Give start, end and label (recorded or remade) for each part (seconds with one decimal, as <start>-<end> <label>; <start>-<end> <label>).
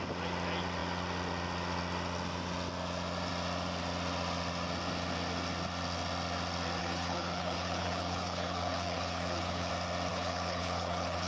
0.0-6.8 recorded; 6.8-9.7 remade; 9.7-10.1 recorded; 10.1-11.3 remade